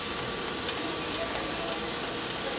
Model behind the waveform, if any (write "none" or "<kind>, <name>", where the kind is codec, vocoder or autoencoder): none